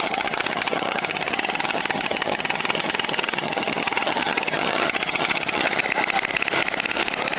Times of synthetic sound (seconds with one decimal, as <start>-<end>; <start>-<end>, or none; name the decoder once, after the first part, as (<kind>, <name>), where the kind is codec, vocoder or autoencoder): 0.0-5.8 (vocoder, HiFi-GAN)